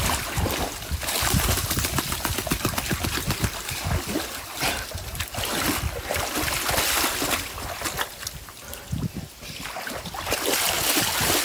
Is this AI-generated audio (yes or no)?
no